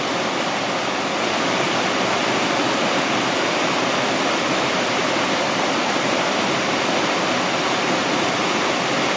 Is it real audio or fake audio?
real